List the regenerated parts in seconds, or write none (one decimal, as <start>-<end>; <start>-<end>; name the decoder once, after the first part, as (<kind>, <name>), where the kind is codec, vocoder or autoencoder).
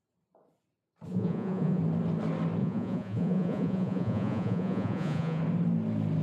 1.1-1.8 (vocoder, Vocos); 2.6-5.4